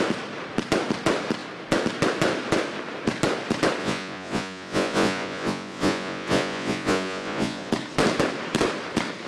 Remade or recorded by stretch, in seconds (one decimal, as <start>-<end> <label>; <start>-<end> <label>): 0.0-3.8 recorded; 3.8-7.7 remade; 7.7-9.3 recorded